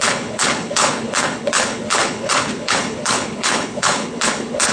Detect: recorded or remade remade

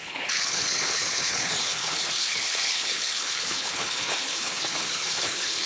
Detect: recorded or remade remade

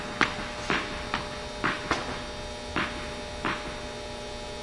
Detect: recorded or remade recorded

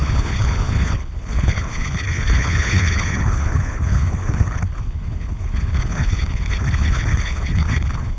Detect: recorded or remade remade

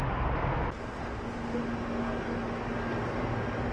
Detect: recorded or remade recorded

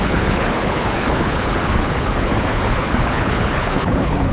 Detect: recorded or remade remade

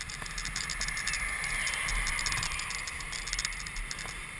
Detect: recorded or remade recorded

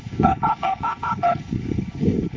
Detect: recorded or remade remade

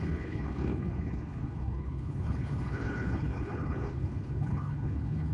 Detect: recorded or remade remade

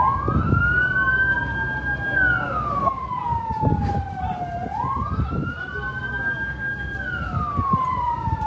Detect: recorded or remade recorded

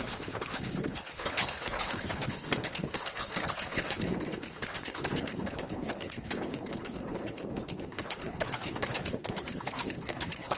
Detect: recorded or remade remade